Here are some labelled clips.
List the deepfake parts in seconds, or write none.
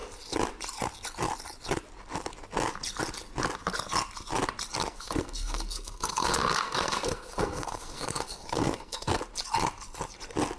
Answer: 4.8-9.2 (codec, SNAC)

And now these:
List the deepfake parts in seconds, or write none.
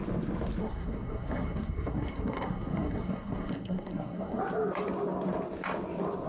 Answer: 0.6-4.4 (codec, SNAC)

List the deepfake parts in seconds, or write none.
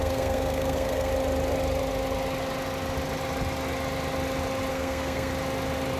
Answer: 0.0-1.1 (codec, SNAC); 4.7-5.3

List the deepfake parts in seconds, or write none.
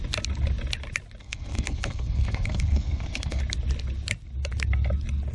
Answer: 1.2-3.4 (codec, SNAC)